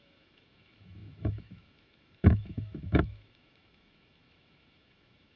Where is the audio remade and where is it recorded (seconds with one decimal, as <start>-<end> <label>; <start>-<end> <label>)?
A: 0.0-5.4 remade